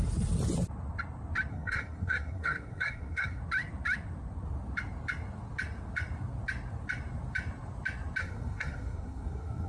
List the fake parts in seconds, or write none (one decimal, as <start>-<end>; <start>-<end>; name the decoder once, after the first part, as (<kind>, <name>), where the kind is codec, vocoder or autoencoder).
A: 1.5-3.4 (codec, SNAC); 8.2-9.7